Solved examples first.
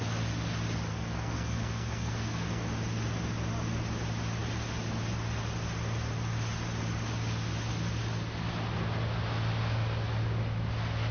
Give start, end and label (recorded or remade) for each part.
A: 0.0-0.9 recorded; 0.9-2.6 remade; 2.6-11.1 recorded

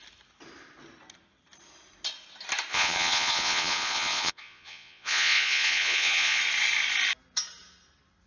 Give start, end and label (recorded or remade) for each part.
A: 0.0-2.7 recorded; 2.7-6.4 remade; 6.4-8.3 recorded

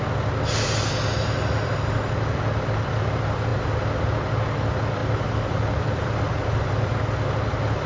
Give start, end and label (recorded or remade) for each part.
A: 0.0-5.0 recorded; 5.0-6.9 remade; 6.9-7.9 recorded

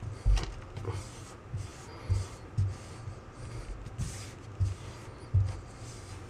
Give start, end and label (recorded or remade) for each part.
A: 0.0-6.3 recorded

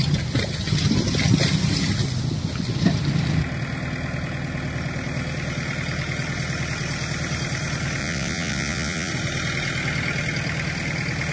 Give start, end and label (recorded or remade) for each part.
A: 0.0-8.0 recorded; 8.0-9.1 remade; 9.1-11.3 recorded

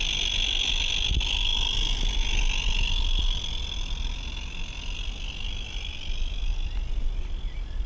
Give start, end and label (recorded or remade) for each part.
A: 0.0-7.9 recorded

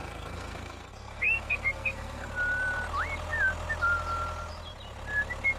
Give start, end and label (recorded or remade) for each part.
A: 0.0-2.3 remade; 2.3-5.6 recorded

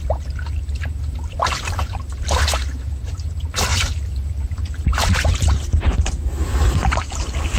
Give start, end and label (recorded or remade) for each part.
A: 0.0-7.6 remade